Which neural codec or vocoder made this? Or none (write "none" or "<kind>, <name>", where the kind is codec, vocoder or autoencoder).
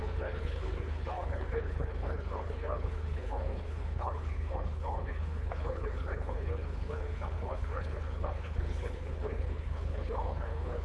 codec, HILCodec